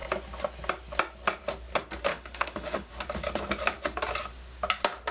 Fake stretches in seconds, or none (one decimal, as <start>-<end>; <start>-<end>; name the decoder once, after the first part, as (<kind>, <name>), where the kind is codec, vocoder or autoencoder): 2.1-2.9 (autoencoder, DAC-VAE)